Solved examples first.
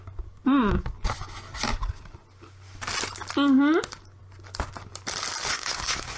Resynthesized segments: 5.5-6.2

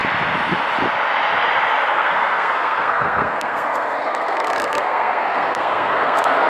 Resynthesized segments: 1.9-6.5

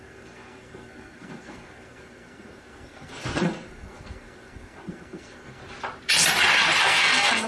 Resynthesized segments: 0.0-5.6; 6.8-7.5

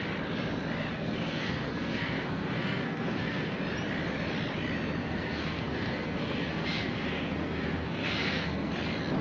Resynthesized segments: 0.9-3.6; 5.0-8.7